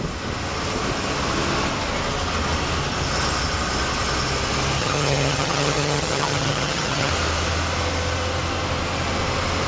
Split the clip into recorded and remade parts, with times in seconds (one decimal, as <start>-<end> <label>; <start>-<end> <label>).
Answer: 0.0-4.8 recorded; 4.8-7.1 remade; 7.1-9.7 recorded